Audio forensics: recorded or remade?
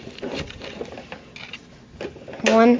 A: recorded